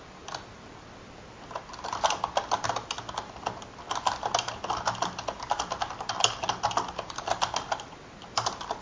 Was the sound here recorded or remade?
recorded